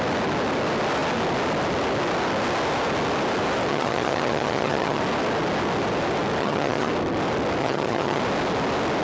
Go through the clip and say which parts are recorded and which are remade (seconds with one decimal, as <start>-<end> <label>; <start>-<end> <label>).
0.0-3.7 recorded; 3.7-5.0 remade; 5.0-6.4 recorded; 6.4-6.9 remade; 6.9-7.6 recorded; 7.6-8.2 remade; 8.2-9.0 recorded